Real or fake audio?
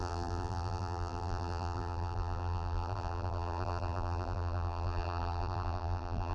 fake